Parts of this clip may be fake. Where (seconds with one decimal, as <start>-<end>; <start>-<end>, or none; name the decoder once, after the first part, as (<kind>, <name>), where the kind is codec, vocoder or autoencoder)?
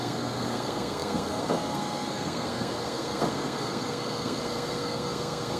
0.0-5.6 (codec, SNAC)